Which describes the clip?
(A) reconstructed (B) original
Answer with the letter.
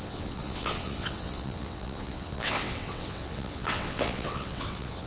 A